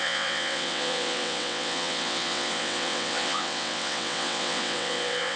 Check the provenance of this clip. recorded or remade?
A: remade